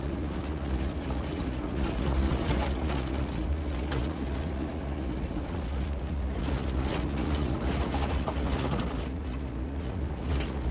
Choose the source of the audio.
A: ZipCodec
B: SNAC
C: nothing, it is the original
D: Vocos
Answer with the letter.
D